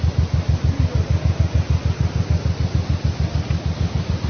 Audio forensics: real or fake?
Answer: real